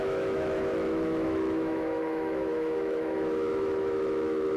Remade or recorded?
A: remade